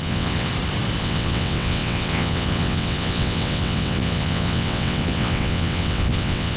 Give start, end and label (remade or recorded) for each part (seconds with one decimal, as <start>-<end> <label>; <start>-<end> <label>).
0.0-0.5 remade; 0.5-1.0 recorded; 1.0-6.6 remade